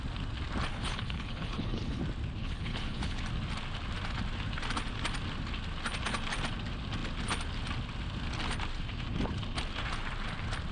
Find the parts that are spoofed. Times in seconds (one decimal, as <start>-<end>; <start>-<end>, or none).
0.7-2.0; 2.4-3.2